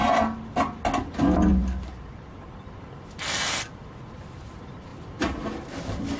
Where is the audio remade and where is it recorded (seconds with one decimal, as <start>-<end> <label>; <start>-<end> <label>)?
0.0-1.5 recorded; 1.5-2.7 remade; 2.7-6.2 recorded